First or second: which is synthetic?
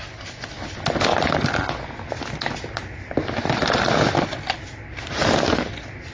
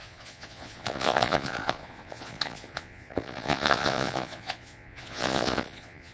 second